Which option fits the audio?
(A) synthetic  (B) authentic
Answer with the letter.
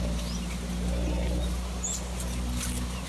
B